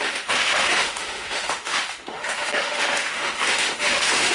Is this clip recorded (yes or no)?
no